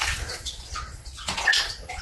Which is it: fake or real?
fake